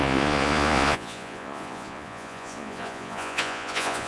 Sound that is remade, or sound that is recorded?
remade